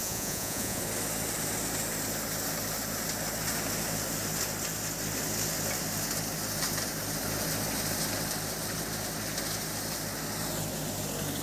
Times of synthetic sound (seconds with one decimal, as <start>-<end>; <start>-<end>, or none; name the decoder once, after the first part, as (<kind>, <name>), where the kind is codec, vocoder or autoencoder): 0.0-0.8 (vocoder, Vocos)